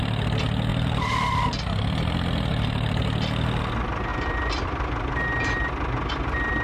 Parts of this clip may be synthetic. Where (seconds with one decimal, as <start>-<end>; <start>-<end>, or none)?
0.7-1.3; 2.5-3.0